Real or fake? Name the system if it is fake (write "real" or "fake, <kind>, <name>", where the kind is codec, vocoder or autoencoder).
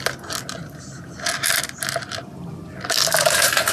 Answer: real